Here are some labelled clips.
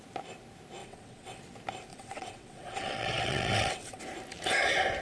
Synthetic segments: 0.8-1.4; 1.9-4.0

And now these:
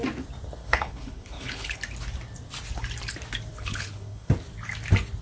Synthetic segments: 0.6-1.8; 3.5-4.3

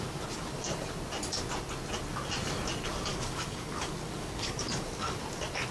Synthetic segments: 3.1-5.2